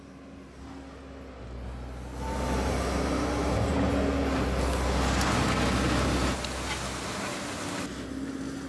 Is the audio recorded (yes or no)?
yes